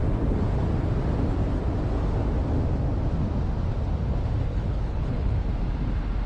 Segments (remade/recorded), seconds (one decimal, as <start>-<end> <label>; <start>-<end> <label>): 0.0-4.5 recorded; 4.5-5.4 remade; 5.4-6.3 recorded